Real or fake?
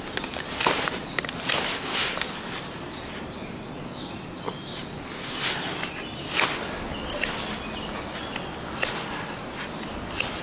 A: real